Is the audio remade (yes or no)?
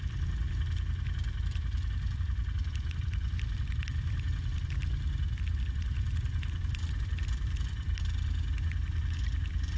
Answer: no